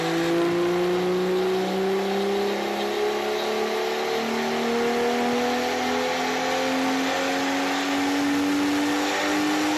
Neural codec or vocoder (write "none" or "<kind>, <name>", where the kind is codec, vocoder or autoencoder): none